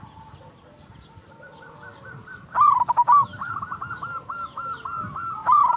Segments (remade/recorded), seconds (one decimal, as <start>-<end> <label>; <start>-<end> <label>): 0.0-5.8 recorded